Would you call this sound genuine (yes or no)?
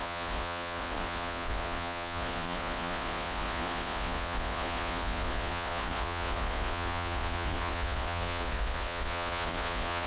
no